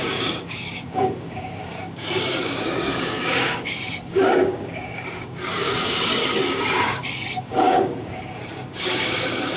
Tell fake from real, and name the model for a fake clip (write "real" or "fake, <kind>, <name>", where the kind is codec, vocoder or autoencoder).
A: fake, codec, DAC